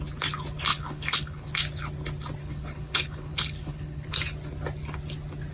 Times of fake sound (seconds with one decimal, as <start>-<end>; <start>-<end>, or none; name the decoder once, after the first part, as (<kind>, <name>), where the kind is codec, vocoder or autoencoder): 0.7-1.5 (codec, HILCodec); 2.4-4.1